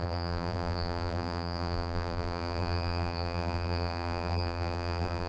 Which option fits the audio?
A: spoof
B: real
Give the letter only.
A